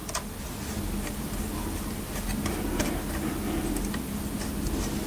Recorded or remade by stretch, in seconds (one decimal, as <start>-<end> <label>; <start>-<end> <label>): 0.0-5.1 recorded